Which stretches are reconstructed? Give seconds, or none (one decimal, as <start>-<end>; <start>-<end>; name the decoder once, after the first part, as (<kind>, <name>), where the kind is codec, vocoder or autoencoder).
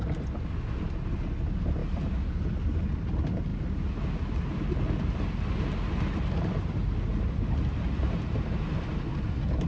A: none